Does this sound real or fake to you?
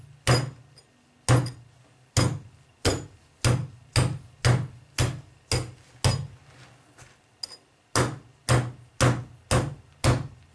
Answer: real